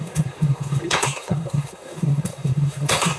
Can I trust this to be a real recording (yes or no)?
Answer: no